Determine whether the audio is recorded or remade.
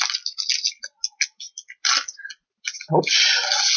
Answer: recorded